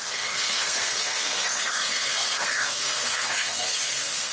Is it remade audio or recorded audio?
remade